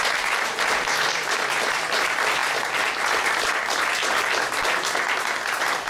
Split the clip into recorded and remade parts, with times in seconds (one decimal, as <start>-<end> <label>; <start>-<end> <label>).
0.0-5.9 recorded